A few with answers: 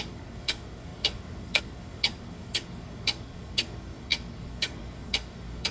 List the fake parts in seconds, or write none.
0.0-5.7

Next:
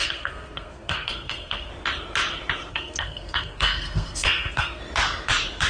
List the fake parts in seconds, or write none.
0.0-1.7; 2.7-4.8

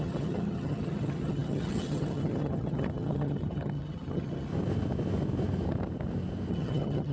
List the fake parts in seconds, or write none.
0.0-4.5; 6.5-7.1

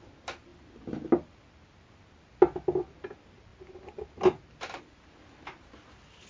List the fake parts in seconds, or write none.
none

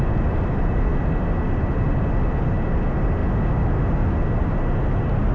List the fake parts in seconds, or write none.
none

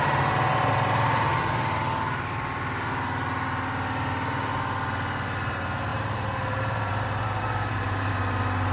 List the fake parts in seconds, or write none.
0.5-1.8; 5.9-8.1

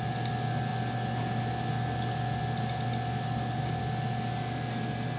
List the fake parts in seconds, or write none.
none

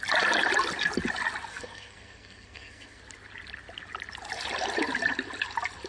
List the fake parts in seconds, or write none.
1.5-3.0